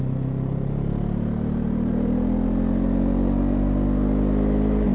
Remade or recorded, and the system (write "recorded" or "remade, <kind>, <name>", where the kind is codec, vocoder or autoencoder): recorded